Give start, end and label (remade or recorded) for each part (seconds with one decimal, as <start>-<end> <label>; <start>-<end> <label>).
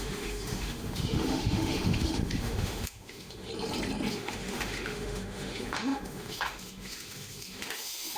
0.0-3.5 remade; 3.5-4.1 recorded; 4.1-8.2 remade